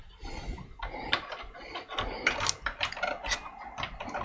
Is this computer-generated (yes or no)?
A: no